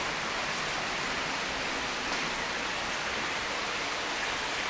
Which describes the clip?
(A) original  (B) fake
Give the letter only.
A